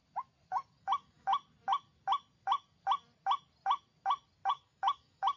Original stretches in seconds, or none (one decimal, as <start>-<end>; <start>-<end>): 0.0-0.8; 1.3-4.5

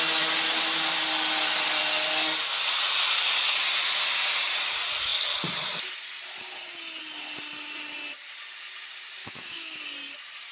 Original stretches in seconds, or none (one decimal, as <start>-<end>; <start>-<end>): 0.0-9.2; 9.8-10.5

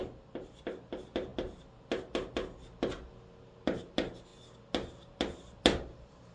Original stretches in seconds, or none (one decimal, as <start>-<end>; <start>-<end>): 0.0-6.3